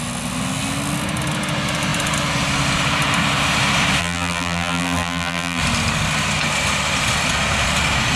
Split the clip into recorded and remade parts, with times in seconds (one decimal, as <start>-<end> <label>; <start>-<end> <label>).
0.0-4.0 recorded; 4.0-5.6 remade; 5.6-8.2 recorded